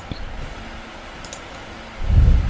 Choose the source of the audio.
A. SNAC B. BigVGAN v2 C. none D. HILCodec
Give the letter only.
C